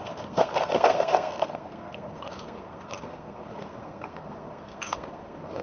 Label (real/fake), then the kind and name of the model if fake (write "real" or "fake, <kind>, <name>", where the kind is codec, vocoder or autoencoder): fake, codec, SNAC